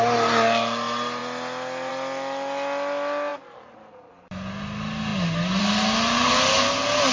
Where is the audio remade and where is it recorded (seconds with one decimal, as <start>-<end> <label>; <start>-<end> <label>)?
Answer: 0.0-7.1 recorded